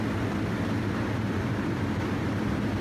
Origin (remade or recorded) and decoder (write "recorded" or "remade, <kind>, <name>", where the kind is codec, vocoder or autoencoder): recorded